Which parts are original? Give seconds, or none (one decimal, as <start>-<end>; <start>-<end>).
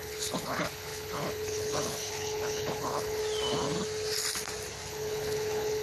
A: 3.2-4.9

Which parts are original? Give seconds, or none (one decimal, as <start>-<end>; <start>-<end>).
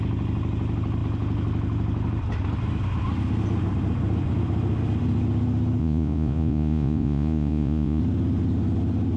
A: 0.0-5.8; 8.0-9.2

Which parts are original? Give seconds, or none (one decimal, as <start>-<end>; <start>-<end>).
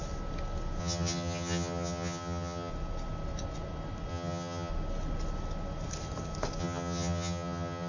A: 0.0-0.8; 2.7-4.1; 4.7-6.6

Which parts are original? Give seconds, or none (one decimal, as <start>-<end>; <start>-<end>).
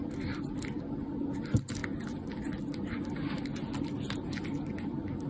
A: 0.0-5.3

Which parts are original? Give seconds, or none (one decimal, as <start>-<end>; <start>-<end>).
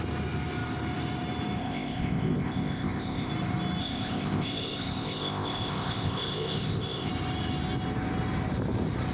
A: 0.0-1.6; 3.3-3.8; 7.1-9.1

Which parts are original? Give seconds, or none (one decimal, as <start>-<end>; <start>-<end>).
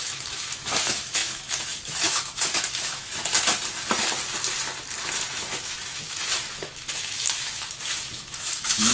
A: 3.2-5.3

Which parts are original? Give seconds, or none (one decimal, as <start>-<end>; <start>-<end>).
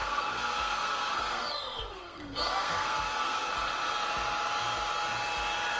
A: 3.5-5.8